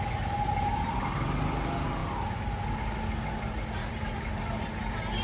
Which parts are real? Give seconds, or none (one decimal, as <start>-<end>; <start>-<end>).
0.0-3.8; 4.4-5.2